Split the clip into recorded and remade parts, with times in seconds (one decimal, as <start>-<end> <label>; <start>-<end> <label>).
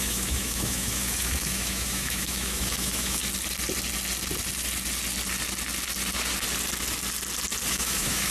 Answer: 0.0-3.2 remade; 3.2-7.7 recorded; 7.7-8.3 remade